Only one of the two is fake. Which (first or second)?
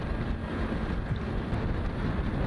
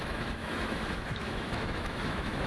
second